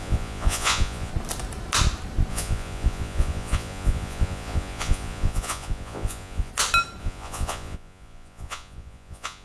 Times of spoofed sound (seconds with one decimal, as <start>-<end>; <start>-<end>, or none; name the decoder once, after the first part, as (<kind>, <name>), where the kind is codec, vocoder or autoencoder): 0.0-1.1 (vocoder, Vocos); 2.3-6.5; 7.0-9.4